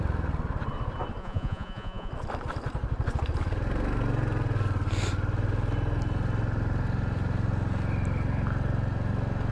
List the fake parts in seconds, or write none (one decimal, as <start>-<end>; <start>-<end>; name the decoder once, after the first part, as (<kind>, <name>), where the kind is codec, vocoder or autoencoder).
1.2-2.1 (vocoder, Vocos)